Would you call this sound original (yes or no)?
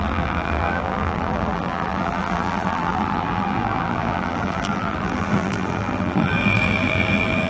no